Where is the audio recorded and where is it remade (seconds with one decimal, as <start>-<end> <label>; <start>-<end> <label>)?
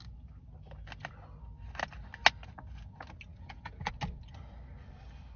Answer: 0.0-3.3 recorded; 3.3-3.9 remade; 3.9-5.4 recorded